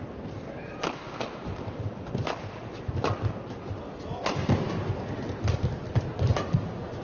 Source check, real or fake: real